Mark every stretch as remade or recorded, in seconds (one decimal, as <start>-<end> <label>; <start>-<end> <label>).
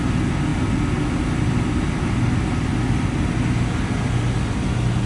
0.0-5.1 recorded